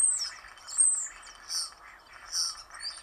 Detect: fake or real real